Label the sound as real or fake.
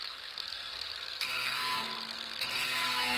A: fake